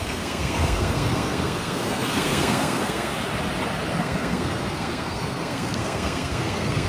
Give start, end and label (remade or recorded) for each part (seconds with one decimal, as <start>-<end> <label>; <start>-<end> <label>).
0.0-3.1 remade; 3.1-3.9 recorded; 3.9-6.9 remade